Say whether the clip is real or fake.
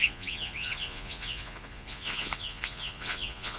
fake